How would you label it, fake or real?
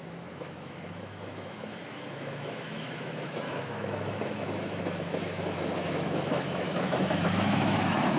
fake